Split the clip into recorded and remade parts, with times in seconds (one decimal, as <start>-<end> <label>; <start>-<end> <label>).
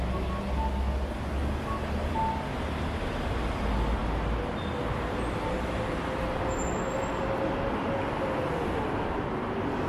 0.0-9.9 recorded